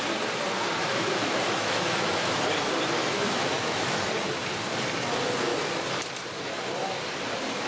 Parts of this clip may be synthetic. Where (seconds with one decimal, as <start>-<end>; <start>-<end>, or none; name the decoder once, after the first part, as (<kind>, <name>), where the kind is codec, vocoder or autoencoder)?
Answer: 0.8-2.4 (autoencoder, DAC-VAE); 3.0-4.1